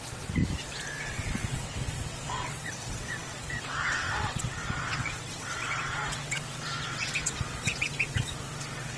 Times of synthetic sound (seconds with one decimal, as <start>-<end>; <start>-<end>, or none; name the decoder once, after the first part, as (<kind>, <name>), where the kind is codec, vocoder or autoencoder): 0.0-0.4 (vocoder, WaveNeXt); 1.0-9.0